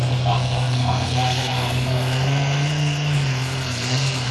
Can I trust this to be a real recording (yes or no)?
no